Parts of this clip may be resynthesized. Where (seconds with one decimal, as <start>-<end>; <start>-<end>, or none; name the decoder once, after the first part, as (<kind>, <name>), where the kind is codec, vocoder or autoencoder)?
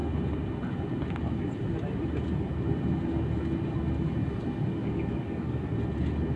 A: 4.7-5.7 (codec, DAC)